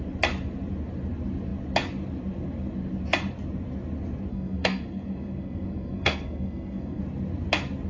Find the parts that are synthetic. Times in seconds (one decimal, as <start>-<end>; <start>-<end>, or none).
4.3-7.0